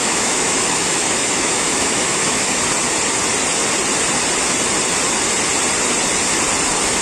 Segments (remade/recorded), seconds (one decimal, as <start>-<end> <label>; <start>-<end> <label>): 0.0-2.6 remade; 2.6-7.0 recorded